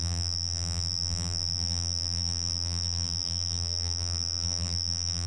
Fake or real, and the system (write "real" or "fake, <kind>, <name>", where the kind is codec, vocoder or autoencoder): fake, vocoder, BigVGAN v2